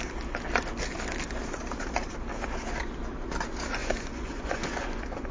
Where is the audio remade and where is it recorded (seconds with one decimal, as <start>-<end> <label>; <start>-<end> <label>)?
0.0-3.8 recorded; 3.8-5.3 remade